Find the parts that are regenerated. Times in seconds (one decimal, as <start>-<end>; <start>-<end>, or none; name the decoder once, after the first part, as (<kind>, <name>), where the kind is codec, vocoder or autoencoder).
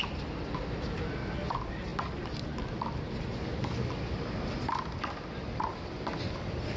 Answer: none